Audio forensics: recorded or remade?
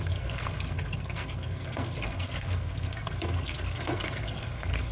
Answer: remade